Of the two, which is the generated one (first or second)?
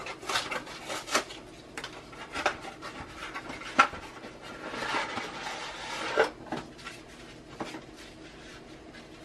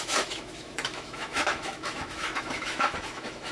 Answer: second